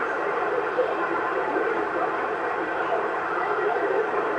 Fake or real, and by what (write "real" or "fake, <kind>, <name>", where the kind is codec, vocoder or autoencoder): fake, vocoder, BigVGAN v2